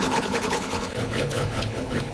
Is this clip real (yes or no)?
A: no